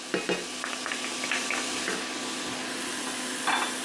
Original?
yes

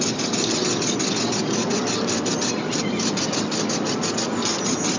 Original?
yes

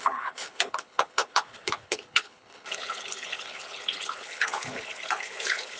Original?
no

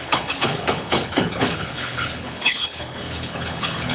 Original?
no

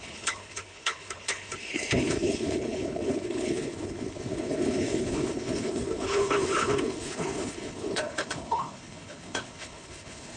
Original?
no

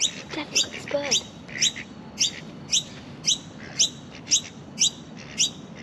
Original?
yes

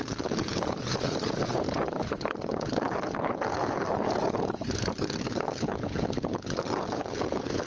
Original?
no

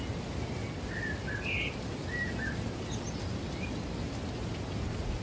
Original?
yes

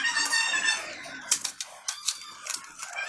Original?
yes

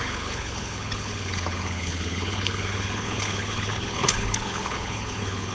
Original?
no